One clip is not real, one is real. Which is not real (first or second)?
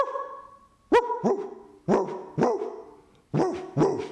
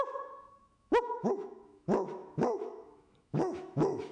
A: second